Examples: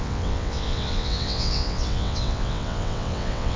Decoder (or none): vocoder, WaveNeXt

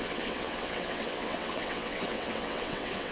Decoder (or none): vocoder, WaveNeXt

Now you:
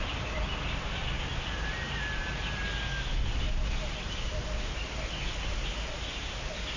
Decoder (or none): none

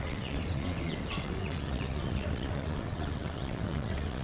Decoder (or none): vocoder, WaveNeXt